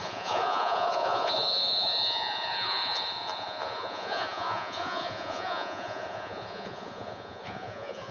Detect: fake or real fake